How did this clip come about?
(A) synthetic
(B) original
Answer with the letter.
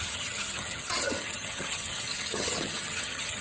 A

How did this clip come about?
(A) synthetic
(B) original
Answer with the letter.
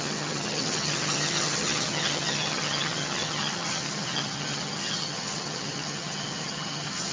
A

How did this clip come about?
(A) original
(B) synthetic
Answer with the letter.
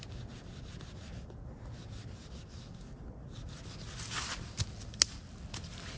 A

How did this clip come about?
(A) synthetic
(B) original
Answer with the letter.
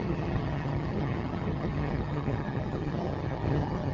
A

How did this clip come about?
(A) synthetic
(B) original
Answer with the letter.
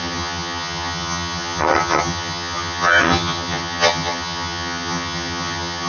A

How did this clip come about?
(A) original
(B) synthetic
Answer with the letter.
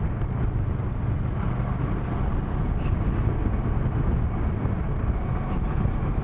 A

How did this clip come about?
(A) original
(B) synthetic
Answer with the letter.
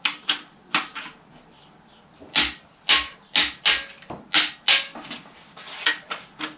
A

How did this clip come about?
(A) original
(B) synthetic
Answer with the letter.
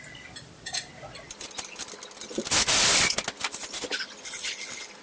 A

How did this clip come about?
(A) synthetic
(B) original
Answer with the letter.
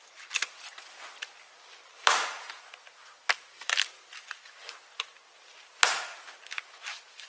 B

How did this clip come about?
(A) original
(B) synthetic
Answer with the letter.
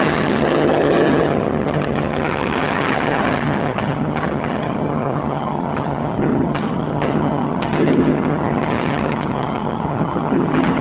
B